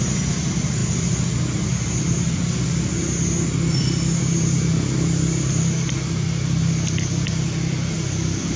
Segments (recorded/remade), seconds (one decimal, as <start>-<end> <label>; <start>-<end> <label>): 0.0-8.6 recorded